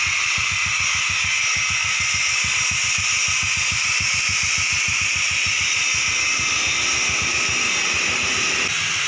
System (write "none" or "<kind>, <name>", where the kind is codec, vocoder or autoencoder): none